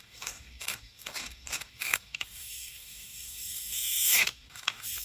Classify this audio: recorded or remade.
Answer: remade